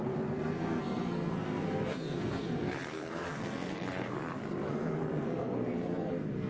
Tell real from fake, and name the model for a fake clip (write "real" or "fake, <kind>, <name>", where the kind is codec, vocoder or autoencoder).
fake, codec, SNAC